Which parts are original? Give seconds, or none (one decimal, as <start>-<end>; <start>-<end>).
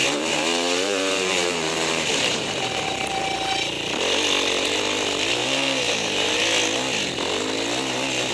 2.9-5.4; 6.4-8.3